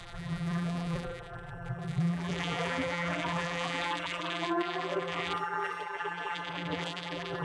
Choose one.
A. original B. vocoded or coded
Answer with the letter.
B